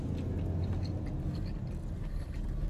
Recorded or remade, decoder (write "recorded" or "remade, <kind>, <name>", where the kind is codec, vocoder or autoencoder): recorded